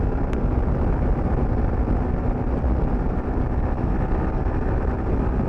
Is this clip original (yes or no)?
no